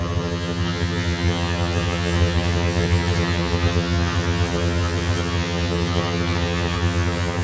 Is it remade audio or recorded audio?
remade